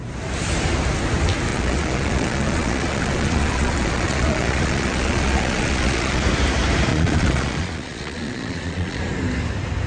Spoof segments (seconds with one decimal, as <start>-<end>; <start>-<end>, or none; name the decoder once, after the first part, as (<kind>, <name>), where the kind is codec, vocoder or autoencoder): 1.5-6.2 (vocoder, Vocos); 6.9-9.0